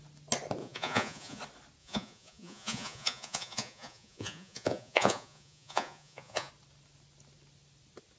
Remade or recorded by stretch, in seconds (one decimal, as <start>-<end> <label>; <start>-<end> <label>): 0.0-0.6 recorded; 0.6-1.4 remade; 1.4-1.8 recorded; 1.8-6.5 remade; 6.5-8.2 recorded